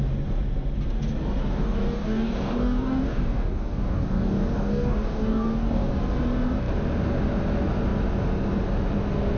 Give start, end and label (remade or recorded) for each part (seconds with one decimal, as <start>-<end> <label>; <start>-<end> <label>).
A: 0.0-1.4 recorded; 1.4-5.9 remade; 5.9-9.4 recorded